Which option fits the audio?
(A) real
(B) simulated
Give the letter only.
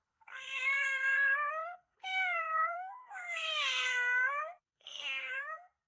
B